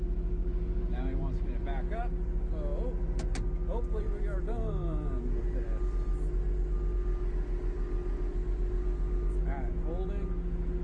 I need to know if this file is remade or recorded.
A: recorded